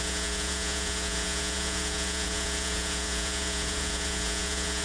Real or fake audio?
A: fake